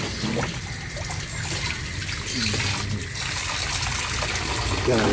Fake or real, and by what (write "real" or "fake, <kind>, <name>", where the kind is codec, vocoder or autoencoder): real